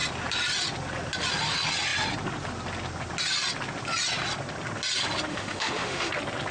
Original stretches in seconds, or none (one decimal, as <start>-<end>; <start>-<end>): 0.0-5.3; 6.1-6.5